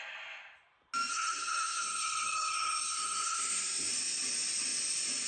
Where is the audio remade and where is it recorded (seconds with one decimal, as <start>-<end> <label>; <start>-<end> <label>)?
0.0-1.1 recorded; 1.1-3.9 remade; 3.9-5.3 recorded